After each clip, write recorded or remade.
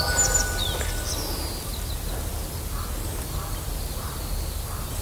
recorded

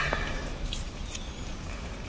remade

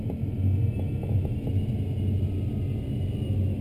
recorded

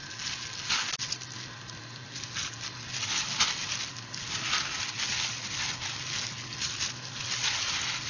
recorded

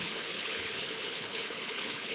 remade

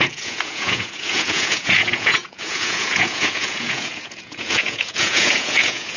remade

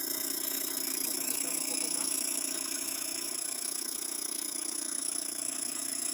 remade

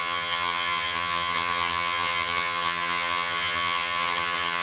remade